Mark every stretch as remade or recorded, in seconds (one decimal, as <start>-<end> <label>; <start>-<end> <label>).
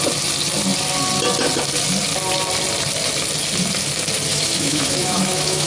0.0-4.3 recorded; 4.3-5.7 remade